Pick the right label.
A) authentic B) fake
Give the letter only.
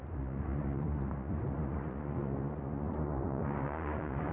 B